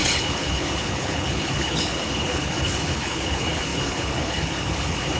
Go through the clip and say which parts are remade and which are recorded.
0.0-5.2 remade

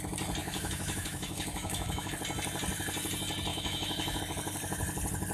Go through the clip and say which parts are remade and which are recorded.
0.0-0.4 recorded; 0.4-2.1 remade; 2.1-3.5 recorded; 3.5-4.2 remade; 4.2-5.3 recorded

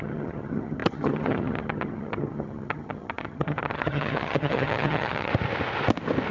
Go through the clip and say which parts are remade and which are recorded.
0.0-5.3 remade; 5.3-6.3 recorded

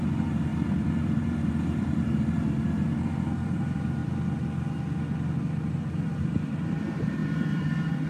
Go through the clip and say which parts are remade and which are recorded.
0.0-4.0 remade; 4.0-5.7 recorded; 5.7-8.1 remade

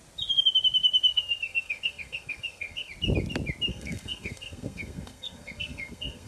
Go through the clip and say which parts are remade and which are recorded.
0.0-1.1 recorded; 1.1-2.9 remade; 2.9-3.7 recorded; 3.7-6.3 remade